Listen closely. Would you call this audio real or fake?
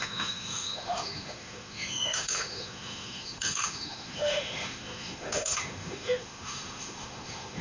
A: fake